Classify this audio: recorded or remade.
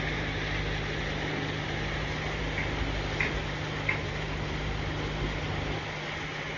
recorded